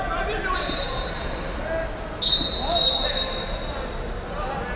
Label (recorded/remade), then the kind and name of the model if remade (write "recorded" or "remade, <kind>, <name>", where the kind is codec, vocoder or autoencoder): recorded